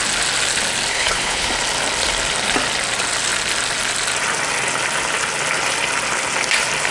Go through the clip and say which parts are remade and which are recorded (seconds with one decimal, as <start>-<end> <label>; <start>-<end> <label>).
0.0-0.9 recorded; 0.9-1.5 remade; 1.5-6.9 recorded